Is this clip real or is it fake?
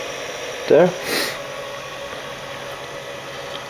real